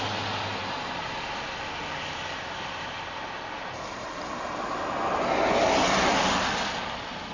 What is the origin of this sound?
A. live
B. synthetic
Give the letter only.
A